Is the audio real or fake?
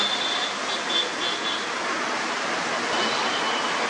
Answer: real